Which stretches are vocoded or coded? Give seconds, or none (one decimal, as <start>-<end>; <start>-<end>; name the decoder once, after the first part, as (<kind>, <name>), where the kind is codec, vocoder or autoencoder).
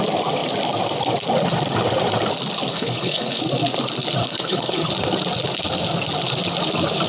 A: 2.7-3.4 (codec, HILCodec); 4.2-4.9